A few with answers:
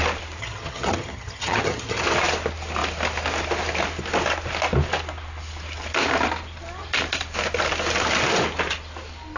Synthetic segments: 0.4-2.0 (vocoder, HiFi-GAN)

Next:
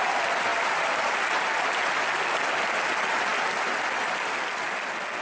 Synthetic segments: none

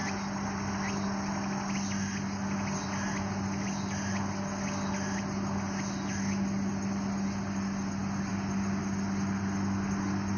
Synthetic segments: none